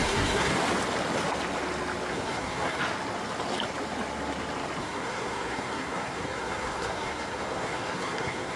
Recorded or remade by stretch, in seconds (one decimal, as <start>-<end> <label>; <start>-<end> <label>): 0.0-0.5 remade; 0.5-2.1 recorded; 2.1-2.8 remade; 2.8-4.8 recorded; 4.8-8.6 remade